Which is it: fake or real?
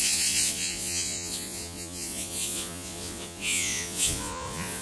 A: fake